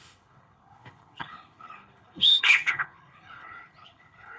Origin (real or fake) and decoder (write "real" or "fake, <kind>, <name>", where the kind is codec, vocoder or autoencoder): fake, codec, HILCodec